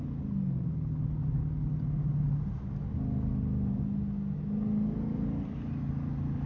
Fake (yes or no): no